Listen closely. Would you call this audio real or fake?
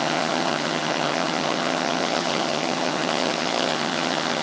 fake